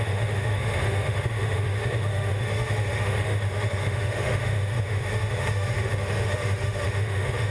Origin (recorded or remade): remade